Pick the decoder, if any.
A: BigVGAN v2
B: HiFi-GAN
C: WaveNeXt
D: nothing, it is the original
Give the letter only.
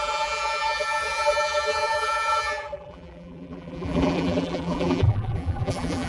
A